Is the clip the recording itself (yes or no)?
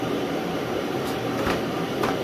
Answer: no